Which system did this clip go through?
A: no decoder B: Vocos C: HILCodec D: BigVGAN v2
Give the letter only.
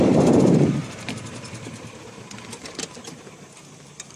D